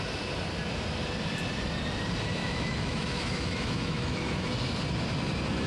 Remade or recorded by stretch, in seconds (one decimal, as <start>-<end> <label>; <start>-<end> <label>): 0.0-2.4 recorded; 2.4-4.5 remade; 4.5-5.7 recorded